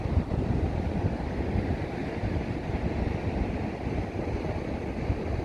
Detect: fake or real real